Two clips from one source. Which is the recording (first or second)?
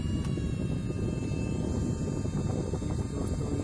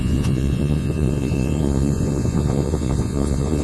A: first